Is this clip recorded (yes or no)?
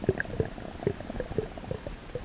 yes